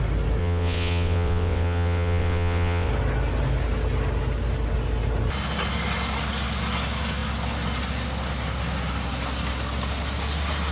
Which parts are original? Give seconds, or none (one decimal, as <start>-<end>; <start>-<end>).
0.0-0.4; 2.9-10.7